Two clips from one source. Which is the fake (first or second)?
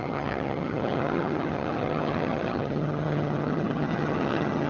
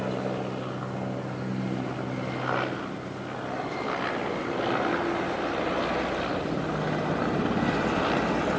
first